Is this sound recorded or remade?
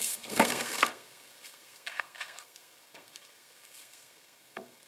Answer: remade